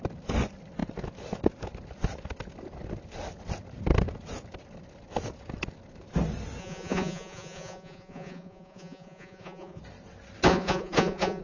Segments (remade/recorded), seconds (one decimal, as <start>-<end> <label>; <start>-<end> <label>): 0.0-6.6 recorded; 6.6-9.8 remade; 9.8-10.5 recorded; 10.5-11.4 remade